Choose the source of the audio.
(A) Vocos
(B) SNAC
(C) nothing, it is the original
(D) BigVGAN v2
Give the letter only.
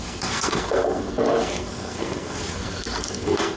B